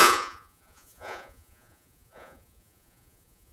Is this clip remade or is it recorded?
remade